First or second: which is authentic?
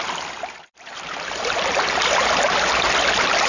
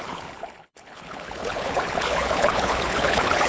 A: first